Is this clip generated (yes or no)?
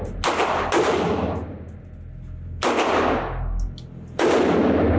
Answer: no